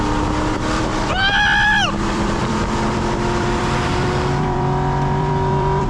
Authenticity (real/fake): fake